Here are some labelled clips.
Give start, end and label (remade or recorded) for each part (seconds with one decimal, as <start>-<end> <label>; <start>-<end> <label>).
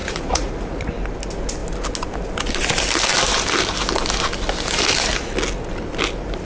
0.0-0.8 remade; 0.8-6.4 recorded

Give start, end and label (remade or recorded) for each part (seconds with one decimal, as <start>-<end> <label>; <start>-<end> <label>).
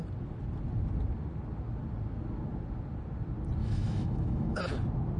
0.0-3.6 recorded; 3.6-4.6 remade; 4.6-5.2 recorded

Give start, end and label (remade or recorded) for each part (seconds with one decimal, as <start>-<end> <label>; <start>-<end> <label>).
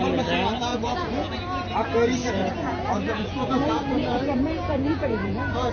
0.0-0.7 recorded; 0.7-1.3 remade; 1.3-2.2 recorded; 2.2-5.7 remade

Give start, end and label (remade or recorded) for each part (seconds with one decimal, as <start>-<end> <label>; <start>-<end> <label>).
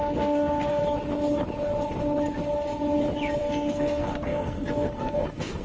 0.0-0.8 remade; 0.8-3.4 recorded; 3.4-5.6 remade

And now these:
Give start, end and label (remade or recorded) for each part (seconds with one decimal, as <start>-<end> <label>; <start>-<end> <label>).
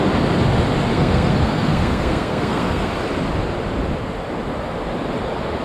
0.0-0.9 recorded; 0.9-2.9 remade; 2.9-5.6 recorded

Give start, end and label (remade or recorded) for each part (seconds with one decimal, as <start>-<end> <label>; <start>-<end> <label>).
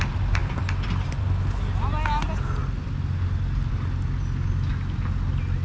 0.0-5.6 recorded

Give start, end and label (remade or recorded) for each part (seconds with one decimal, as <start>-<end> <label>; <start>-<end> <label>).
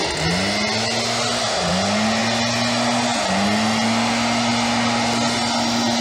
0.0-6.0 recorded